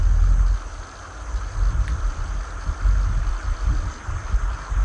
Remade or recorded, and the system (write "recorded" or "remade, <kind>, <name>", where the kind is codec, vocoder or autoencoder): recorded